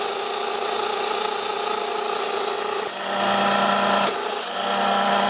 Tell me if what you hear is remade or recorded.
recorded